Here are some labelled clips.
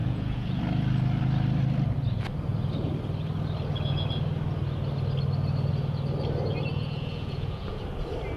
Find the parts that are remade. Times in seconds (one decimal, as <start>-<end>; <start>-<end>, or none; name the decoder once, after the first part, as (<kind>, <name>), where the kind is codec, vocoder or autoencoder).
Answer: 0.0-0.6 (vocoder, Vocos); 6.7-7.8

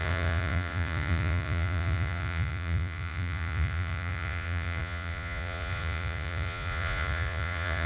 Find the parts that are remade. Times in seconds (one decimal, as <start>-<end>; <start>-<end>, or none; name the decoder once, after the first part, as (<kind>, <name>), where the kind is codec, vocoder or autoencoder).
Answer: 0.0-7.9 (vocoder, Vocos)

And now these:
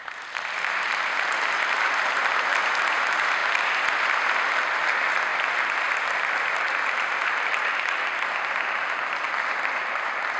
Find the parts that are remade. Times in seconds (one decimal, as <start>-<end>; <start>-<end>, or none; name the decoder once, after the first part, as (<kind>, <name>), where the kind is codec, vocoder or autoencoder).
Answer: 5.3-10.0 (vocoder, BigVGAN v2)

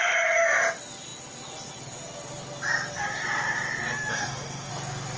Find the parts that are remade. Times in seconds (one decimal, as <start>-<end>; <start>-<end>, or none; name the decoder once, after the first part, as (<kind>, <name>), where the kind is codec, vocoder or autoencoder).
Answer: 4.1-4.7 (codec, DAC)

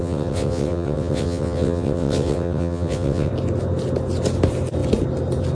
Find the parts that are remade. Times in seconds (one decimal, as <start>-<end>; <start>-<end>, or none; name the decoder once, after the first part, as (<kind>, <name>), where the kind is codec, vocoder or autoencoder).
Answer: 0.0-3.3 (vocoder, WaveNeXt)

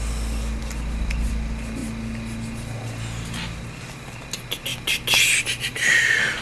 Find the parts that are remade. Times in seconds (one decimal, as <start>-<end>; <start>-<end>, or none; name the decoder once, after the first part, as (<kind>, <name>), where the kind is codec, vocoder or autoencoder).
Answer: none

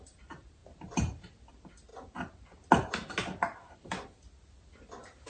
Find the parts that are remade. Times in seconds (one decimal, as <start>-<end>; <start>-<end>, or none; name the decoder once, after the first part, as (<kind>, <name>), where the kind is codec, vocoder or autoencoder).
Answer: none

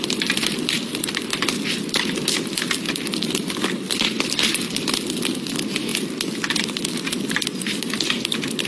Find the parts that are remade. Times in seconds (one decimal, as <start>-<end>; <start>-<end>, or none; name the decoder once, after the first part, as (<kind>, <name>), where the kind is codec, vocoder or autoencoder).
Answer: none